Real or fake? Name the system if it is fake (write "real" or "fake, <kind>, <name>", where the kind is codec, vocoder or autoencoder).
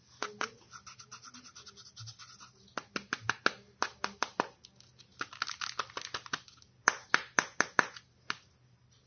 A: real